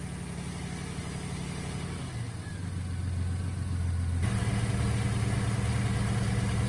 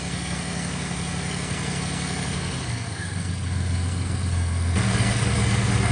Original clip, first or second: first